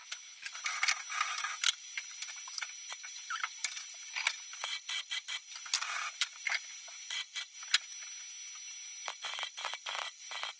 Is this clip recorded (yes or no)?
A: yes